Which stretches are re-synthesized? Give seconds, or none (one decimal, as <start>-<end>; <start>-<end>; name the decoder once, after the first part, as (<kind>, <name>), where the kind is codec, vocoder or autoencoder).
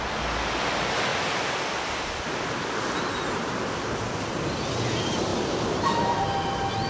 1.1-4.1 (vocoder, BigVGAN v2); 5.3-6.2